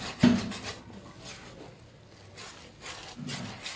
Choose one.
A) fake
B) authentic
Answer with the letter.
B